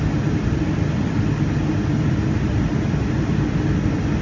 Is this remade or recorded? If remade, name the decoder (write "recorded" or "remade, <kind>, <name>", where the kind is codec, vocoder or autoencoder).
recorded